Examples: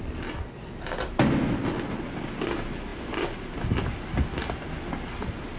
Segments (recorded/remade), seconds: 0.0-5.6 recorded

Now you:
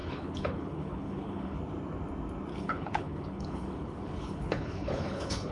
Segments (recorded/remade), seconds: 0.0-1.6 remade; 1.6-2.5 recorded; 2.5-5.5 remade

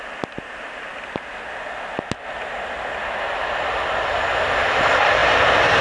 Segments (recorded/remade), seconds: 0.0-5.8 recorded

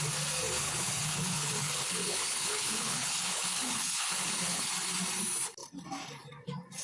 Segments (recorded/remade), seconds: 0.0-0.6 recorded; 0.6-4.7 remade; 4.7-6.8 recorded

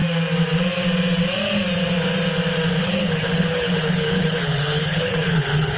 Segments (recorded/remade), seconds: 0.0-2.8 recorded; 2.8-5.8 remade